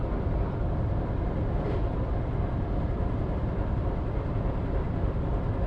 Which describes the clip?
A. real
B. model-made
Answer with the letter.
B